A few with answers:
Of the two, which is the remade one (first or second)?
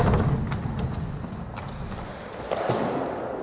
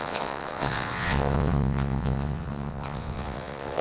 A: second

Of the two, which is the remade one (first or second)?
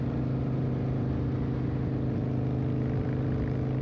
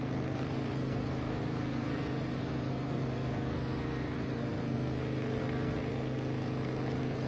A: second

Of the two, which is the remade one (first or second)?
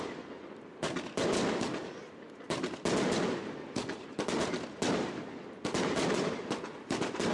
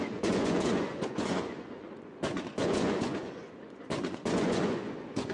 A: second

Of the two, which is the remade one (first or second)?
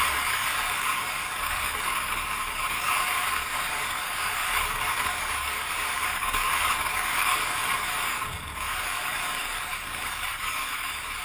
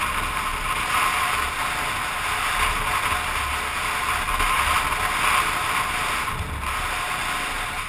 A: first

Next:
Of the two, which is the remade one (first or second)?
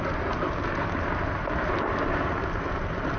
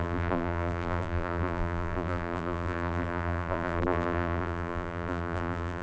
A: second